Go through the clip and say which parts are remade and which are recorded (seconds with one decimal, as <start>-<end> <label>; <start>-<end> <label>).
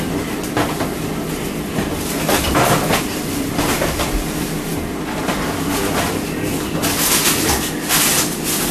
0.0-8.7 recorded